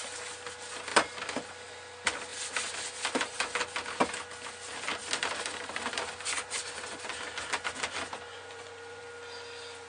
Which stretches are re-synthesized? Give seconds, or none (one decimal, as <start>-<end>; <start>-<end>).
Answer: 8.3-9.0